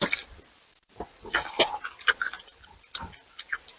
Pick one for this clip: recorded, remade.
recorded